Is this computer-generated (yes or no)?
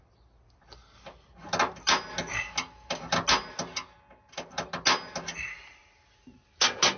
no